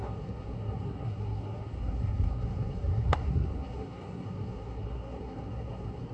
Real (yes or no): no